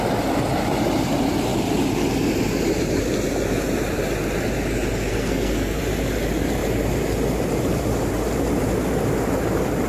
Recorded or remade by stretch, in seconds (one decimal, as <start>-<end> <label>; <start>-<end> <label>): 0.0-5.1 recorded; 5.1-5.8 remade; 5.8-9.9 recorded